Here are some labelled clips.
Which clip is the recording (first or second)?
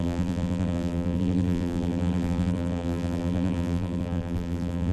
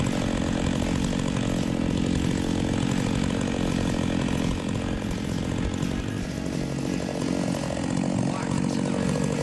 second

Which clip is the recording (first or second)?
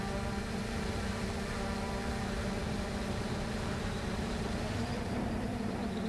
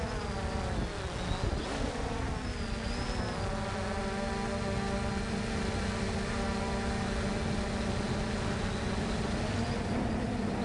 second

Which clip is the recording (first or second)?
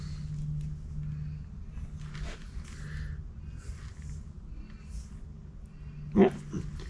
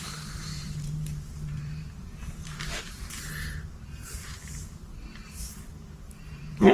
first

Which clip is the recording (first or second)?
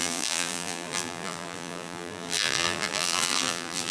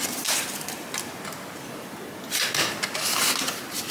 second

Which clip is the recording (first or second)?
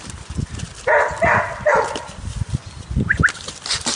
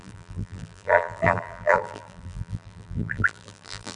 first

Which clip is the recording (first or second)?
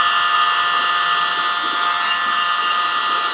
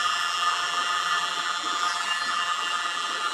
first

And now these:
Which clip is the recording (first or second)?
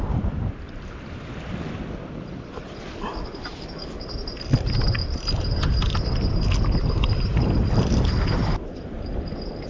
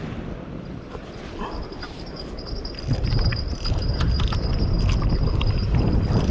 first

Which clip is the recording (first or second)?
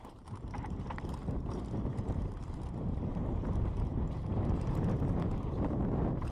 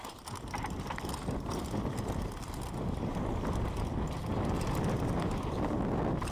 second